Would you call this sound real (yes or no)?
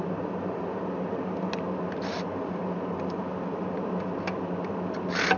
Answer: yes